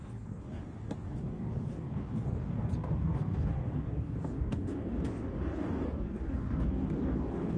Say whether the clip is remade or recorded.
remade